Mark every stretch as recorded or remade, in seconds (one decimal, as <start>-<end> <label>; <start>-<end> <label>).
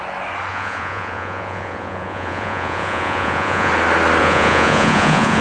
0.0-0.5 recorded; 0.5-3.7 remade; 3.7-4.2 recorded; 4.2-5.4 remade